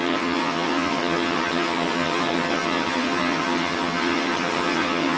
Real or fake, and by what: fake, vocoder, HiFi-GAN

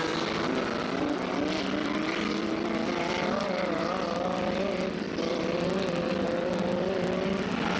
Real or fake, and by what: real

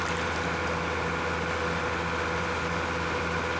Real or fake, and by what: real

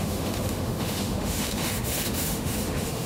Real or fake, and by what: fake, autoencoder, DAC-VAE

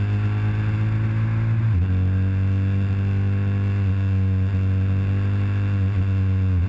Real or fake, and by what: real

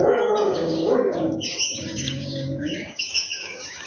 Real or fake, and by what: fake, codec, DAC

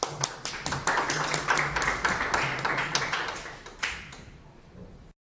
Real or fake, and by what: real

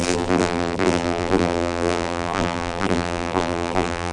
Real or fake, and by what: fake, vocoder, BigVGAN v2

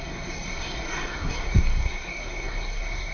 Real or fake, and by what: fake, codec, SNAC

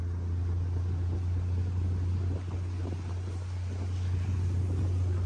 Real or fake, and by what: real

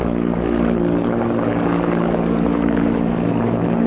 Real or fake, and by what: fake, codec, DAC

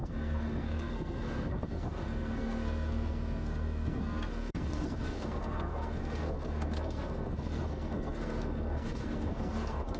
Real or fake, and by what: fake, codec, SNAC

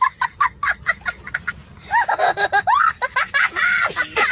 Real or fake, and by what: real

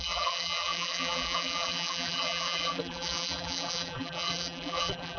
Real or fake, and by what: fake, vocoder, BigVGAN v2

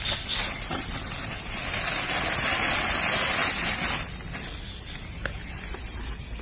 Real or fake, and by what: real